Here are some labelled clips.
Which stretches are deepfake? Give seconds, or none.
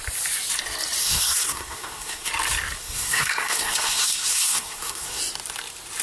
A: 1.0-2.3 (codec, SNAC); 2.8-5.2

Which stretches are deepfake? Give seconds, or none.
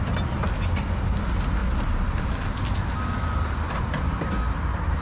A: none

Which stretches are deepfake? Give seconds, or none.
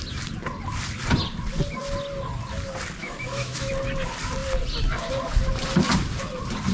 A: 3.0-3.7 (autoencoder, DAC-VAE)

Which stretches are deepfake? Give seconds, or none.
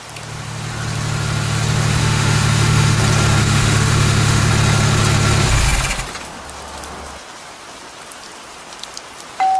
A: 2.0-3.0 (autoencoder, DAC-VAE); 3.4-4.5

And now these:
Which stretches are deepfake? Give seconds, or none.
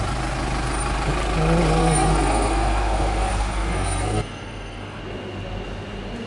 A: 1.8-5.0 (codec, SNAC)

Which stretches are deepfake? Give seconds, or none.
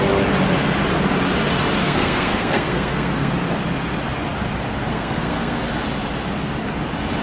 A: 1.8-3.3 (codec, SNAC); 4.9-5.6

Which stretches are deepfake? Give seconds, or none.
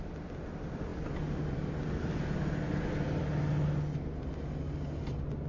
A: none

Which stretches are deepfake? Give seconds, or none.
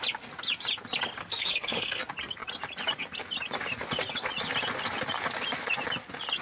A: 1.2-2.0 (codec, SNAC)